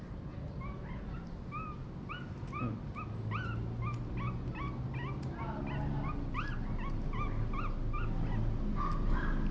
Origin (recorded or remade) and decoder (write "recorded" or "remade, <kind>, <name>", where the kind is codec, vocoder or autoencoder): recorded